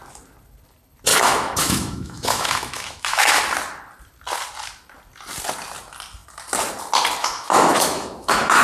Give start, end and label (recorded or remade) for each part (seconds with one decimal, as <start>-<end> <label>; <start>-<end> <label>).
0.0-1.1 recorded; 1.1-3.4 remade; 3.4-7.2 recorded; 7.2-8.6 remade